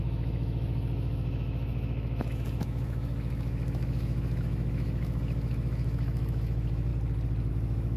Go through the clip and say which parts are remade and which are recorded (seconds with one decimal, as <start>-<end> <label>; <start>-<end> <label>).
0.0-6.9 remade; 6.9-7.5 recorded; 7.5-8.0 remade